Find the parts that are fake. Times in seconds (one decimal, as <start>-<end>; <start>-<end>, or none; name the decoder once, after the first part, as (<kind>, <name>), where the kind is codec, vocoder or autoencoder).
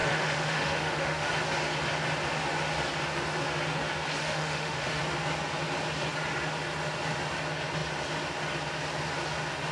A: 0.0-1.3 (autoencoder, DAC-VAE); 4.2-5.0